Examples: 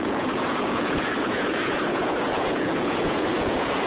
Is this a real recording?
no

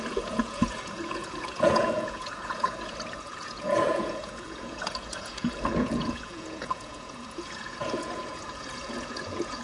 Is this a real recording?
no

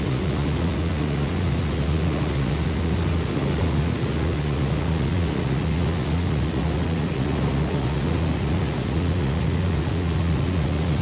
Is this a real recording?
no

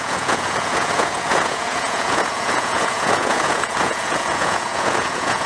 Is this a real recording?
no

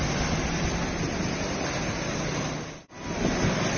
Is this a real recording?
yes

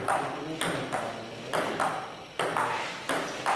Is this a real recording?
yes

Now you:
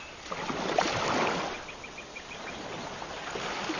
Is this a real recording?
yes